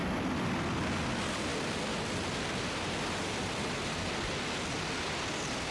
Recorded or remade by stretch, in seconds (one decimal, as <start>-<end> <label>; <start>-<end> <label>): 0.0-5.7 recorded